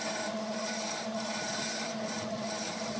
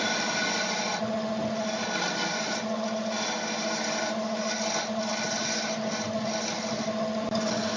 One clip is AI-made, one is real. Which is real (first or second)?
second